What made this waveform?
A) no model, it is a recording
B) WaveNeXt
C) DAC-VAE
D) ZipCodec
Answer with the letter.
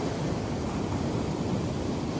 A